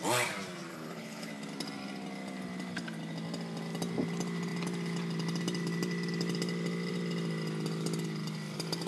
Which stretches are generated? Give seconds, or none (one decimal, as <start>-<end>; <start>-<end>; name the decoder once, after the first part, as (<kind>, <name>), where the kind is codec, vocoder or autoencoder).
0.7-1.3 (codec, HILCodec)